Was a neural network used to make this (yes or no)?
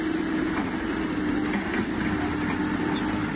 no